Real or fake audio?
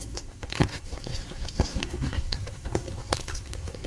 fake